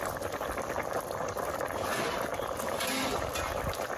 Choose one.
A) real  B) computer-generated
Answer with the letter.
A